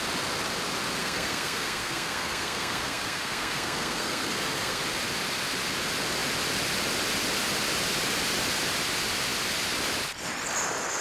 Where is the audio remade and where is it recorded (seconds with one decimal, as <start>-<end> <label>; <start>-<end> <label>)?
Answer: 0.0-1.0 recorded; 1.0-4.8 remade; 4.8-11.0 recorded